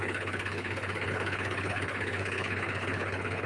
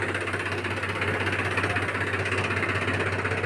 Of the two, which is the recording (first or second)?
second